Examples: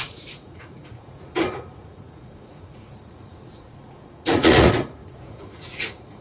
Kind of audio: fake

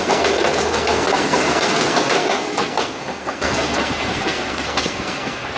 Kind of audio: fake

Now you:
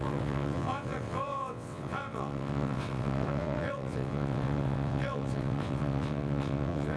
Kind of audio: fake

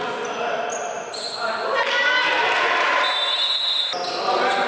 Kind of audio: real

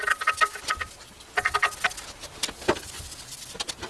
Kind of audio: real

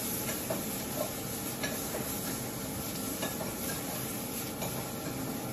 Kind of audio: real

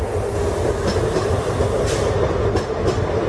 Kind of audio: real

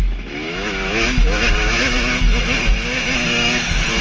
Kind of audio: fake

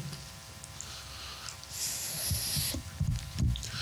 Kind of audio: real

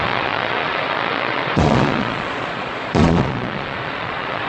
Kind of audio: fake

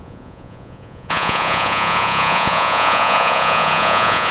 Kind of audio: fake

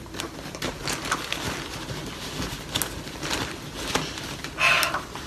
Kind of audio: real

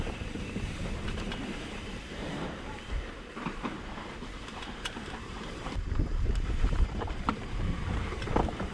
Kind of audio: fake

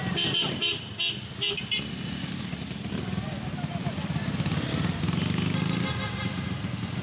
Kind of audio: real